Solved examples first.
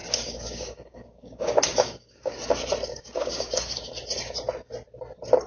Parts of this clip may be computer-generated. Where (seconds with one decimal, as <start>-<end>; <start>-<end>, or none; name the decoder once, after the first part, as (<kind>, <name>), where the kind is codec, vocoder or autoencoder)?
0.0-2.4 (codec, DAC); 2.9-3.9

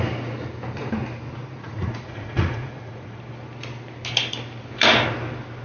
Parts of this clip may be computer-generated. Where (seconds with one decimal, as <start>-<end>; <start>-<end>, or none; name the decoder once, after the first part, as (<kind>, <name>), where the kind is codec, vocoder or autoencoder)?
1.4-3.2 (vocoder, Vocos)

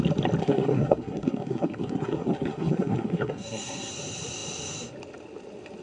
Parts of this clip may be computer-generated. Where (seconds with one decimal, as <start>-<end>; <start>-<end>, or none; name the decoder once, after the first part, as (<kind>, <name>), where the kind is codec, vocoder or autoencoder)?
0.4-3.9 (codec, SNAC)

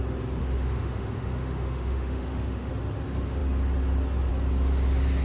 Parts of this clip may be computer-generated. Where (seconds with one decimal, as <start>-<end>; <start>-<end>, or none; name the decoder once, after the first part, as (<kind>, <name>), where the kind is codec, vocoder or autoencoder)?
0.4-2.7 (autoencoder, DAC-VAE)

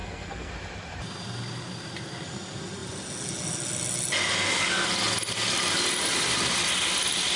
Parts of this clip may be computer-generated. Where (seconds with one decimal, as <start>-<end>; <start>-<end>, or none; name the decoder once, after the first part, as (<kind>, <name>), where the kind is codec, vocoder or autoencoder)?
0.0-0.5 (codec, SNAC)